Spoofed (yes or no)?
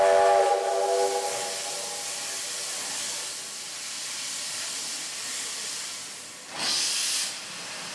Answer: no